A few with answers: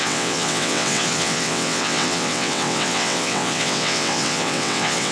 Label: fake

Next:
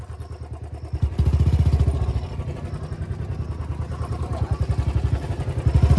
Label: real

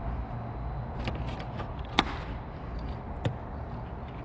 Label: real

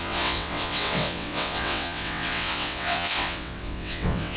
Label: fake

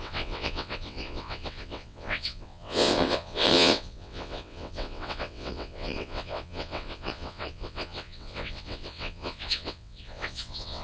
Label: fake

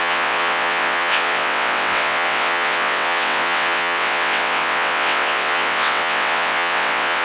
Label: fake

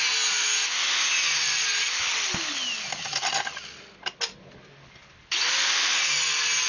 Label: real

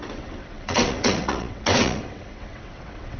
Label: fake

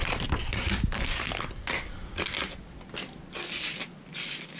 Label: real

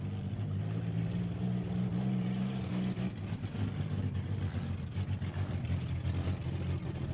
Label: real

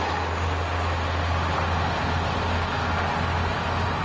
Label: real